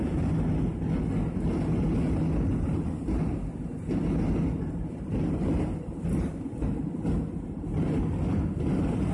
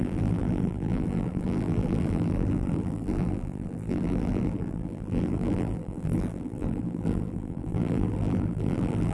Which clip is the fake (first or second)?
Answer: second